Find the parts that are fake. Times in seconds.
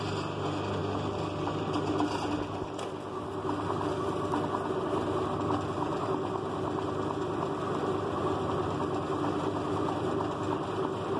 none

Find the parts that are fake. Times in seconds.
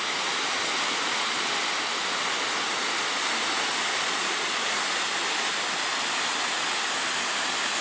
3.9-4.7 (vocoder, Vocos)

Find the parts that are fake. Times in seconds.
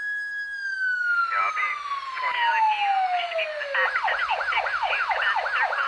none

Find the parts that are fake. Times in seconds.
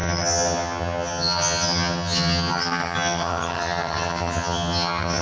0.0-5.2 (vocoder, HiFi-GAN)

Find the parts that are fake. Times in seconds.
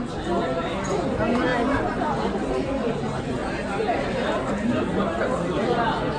none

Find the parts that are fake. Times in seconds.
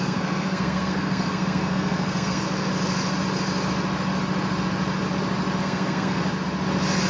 0.0-2.7 (codec, SNAC); 5.6-6.2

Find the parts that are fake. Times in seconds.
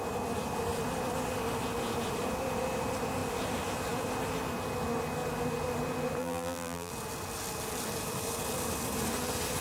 6.2-6.9 (vocoder, BigVGAN v2)